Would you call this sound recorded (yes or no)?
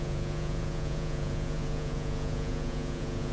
no